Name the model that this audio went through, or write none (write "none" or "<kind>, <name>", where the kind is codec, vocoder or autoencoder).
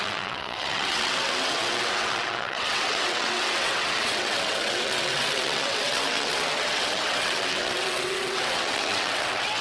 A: vocoder, WaveNeXt